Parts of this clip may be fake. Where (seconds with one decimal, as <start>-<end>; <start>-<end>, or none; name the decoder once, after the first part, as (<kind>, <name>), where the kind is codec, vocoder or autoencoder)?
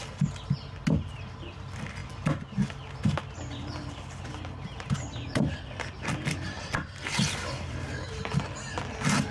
none